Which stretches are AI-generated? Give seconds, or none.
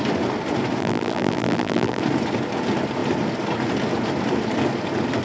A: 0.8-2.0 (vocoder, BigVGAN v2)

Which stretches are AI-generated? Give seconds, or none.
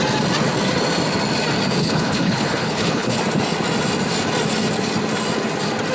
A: 1.8-3.2 (codec, HILCodec)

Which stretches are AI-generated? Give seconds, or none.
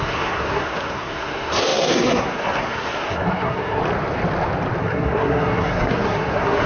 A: 0.0-3.8 (codec, SNAC); 4.8-6.7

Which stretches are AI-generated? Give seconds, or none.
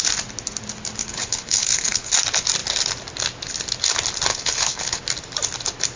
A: 1.0-2.1 (codec, HILCodec); 4.3-5.0